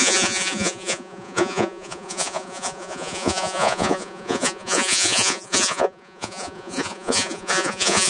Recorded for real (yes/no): no